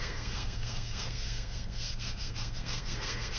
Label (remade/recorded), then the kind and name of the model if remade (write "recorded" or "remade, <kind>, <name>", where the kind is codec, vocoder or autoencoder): remade, codec, SNAC